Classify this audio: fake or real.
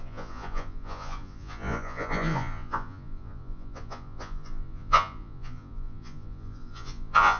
fake